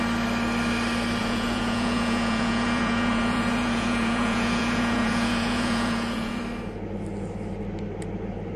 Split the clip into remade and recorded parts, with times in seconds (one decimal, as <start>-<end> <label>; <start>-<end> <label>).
0.0-1.2 recorded; 1.2-6.4 remade; 6.4-8.6 recorded